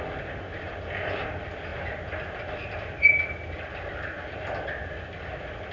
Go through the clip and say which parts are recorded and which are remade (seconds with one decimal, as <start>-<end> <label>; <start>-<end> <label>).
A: 0.0-5.7 recorded